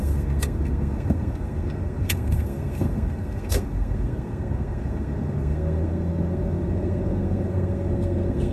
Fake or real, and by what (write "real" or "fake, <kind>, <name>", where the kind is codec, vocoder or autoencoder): fake, codec, SNAC